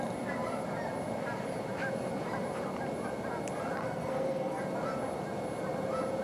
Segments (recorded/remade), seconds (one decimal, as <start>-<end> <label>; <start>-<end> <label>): 0.0-3.8 recorded; 3.8-4.6 remade; 4.6-6.2 recorded